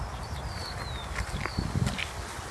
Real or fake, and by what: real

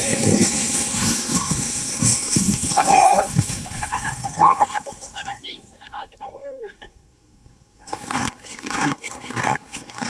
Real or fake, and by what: fake, codec, SNAC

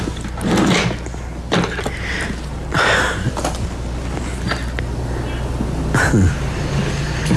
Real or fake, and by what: real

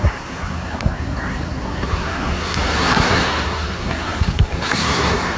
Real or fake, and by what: fake, codec, SNAC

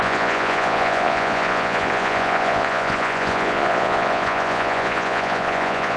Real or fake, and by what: fake, vocoder, Vocos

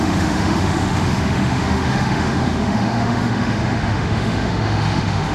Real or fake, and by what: fake, autoencoder, DAC-VAE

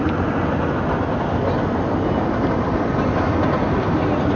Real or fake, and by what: real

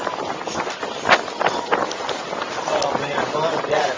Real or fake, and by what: real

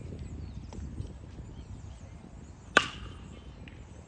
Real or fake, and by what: real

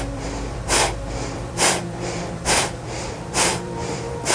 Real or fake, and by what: fake, vocoder, BigVGAN v2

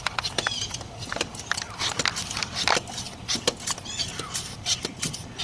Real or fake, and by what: fake, vocoder, BigVGAN v2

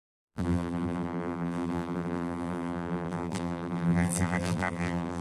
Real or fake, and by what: fake, vocoder, BigVGAN v2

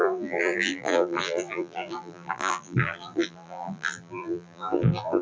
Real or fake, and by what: fake, vocoder, BigVGAN v2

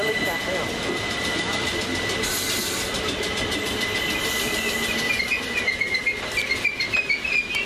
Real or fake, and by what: real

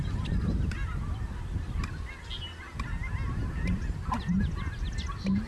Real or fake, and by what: real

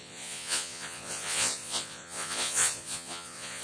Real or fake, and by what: fake, vocoder, Vocos